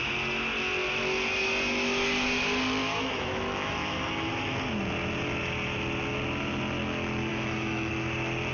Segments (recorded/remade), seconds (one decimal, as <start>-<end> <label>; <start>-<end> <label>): 0.0-2.8 recorded; 2.8-4.3 remade; 4.3-7.3 recorded; 7.3-7.9 remade; 7.9-8.5 recorded

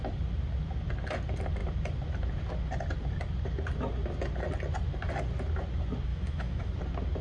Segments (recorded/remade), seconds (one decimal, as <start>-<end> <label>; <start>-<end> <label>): 0.0-6.1 recorded; 6.1-6.7 remade; 6.7-7.2 recorded